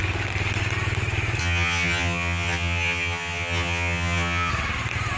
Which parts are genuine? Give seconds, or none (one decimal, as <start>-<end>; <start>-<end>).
0.0-1.4; 4.5-5.2